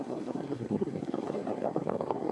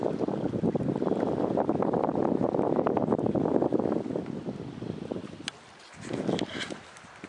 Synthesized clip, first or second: first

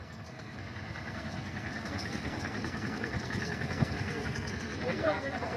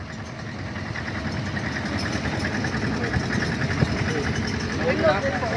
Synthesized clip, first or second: first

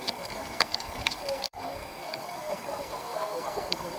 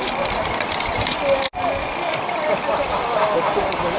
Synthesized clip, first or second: first